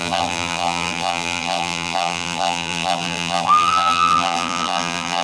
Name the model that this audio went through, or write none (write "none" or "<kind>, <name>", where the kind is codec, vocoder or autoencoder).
vocoder, BigVGAN v2